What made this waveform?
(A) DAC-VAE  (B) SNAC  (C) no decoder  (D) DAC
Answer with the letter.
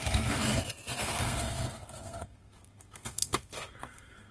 B